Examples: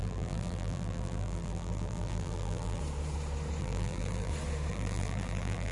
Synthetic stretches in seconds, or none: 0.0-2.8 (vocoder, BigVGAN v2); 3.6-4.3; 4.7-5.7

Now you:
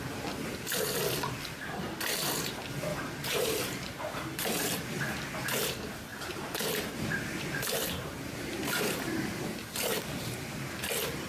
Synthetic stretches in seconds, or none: 2.9-5.0 (vocoder, BigVGAN v2); 6.1-9.0; 9.9-10.7

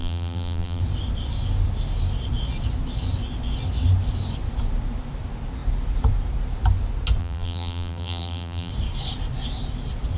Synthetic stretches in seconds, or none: 0.0-0.8 (vocoder, BigVGAN v2); 7.2-8.7

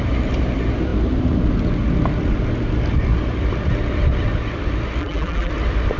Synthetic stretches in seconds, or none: 5.0-5.5 (vocoder, BigVGAN v2)

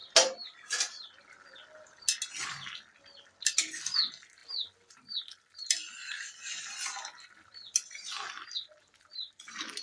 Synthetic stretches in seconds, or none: none

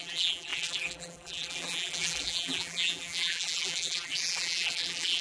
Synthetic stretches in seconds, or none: 0.0-5.2 (vocoder, BigVGAN v2)